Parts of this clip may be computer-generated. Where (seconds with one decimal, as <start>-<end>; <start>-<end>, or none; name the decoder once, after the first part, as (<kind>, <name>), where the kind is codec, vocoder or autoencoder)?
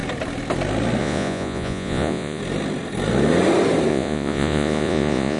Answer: 1.0-2.4 (vocoder, Vocos); 3.9-5.4